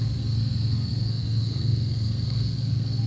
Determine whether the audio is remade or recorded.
remade